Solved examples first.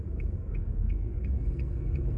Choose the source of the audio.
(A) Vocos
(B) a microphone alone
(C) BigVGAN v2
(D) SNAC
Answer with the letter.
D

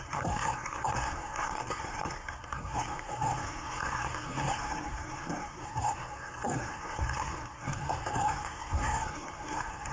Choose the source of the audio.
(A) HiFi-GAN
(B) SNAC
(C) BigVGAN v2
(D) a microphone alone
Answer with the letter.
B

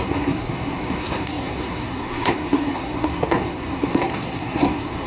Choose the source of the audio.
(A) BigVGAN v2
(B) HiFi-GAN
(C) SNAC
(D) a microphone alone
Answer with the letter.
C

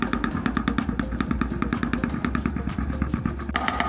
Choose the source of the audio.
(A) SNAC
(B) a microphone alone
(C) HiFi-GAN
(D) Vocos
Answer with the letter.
B